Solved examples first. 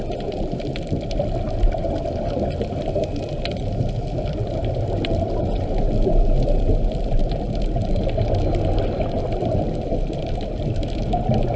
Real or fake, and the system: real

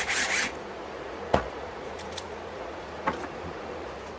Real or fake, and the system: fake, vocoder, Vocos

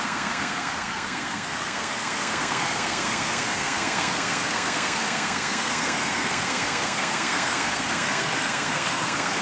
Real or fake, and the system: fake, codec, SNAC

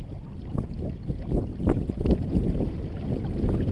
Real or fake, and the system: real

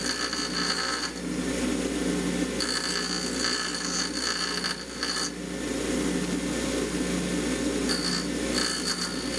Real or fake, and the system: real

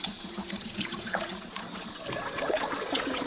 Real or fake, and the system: fake, vocoder, Vocos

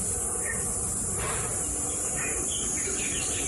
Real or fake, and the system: real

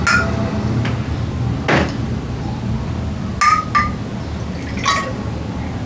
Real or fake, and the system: real